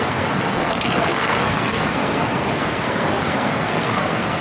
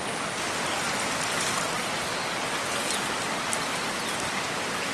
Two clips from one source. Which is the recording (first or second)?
second